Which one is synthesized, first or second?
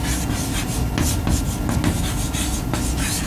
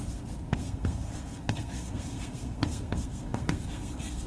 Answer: second